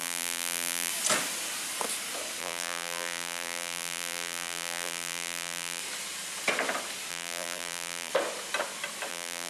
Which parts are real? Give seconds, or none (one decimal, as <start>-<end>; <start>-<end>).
0.9-2.4; 5.8-7.1; 8.1-9.1